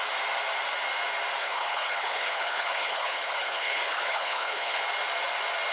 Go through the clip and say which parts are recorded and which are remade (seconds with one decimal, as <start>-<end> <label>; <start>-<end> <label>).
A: 0.0-1.4 recorded; 1.4-4.8 remade; 4.8-5.7 recorded

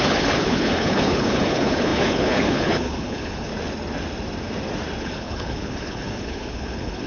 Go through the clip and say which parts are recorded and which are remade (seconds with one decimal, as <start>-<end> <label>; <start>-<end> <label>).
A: 0.0-3.5 remade; 3.5-5.0 recorded; 5.0-7.1 remade

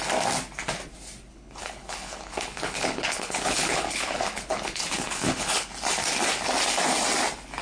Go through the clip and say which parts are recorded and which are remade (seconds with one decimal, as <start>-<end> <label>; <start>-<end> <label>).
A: 0.0-1.3 recorded; 1.3-5.7 remade; 5.7-7.6 recorded

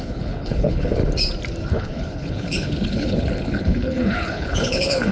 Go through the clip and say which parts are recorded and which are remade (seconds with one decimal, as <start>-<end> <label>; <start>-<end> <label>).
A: 0.0-1.0 remade; 1.0-1.7 recorded; 1.7-5.1 remade

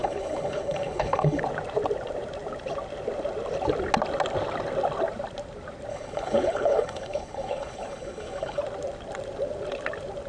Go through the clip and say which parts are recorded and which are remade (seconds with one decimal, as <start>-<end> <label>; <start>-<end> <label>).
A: 0.0-1.4 remade; 1.4-5.9 recorded; 5.9-8.6 remade; 8.6-10.3 recorded

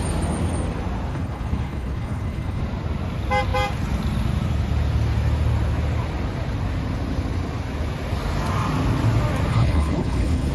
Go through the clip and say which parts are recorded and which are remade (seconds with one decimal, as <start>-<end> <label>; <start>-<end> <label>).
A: 0.0-1.1 recorded; 1.1-2.6 remade; 2.6-9.5 recorded; 9.5-10.5 remade

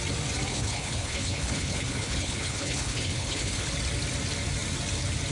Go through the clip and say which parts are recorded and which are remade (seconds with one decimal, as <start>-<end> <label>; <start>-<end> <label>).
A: 0.0-0.5 recorded; 0.5-3.7 remade; 3.7-5.3 recorded